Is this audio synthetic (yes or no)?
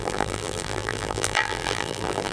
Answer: yes